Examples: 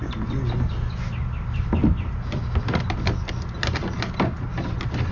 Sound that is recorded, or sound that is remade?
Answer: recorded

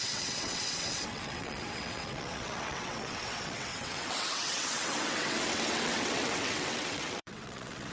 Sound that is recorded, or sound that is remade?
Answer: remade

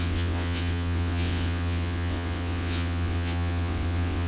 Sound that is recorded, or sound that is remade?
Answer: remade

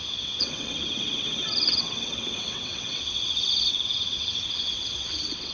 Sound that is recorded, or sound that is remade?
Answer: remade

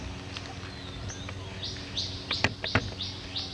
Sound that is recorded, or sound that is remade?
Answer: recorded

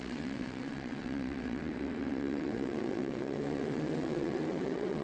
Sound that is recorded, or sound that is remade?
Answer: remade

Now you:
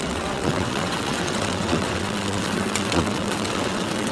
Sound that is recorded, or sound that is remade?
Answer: remade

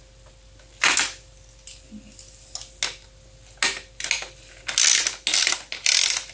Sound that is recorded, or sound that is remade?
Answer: recorded